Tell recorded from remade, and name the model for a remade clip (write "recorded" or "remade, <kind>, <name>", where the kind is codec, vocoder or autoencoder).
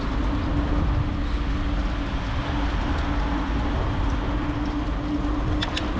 recorded